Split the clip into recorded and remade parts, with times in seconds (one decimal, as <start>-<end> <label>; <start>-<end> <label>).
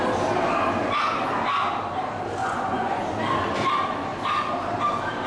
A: 0.0-2.4 recorded; 2.4-3.0 remade; 3.0-5.3 recorded